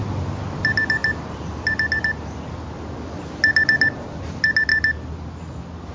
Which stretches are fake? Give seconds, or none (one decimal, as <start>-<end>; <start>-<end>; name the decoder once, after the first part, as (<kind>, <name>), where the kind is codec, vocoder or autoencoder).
none